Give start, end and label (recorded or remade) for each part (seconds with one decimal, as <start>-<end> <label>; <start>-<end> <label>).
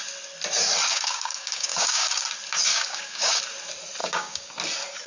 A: 0.0-0.9 recorded; 0.9-2.2 remade; 2.2-2.7 recorded; 2.7-3.4 remade; 3.4-4.0 recorded; 4.0-4.5 remade; 4.5-5.1 recorded